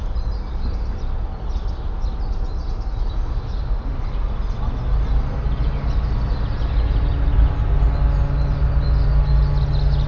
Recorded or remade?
recorded